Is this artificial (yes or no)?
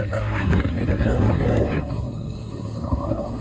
yes